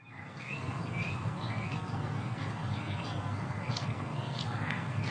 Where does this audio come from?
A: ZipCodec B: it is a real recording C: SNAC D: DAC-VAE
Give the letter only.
C